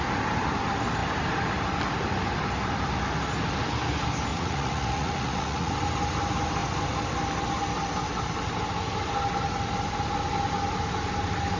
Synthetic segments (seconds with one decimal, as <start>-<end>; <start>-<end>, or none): 4.3-5.7